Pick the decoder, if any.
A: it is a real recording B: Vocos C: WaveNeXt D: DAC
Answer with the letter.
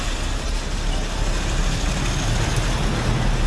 A